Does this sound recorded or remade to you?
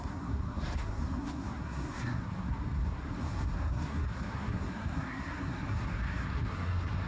remade